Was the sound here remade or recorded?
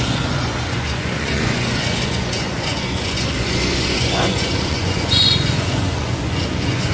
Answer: remade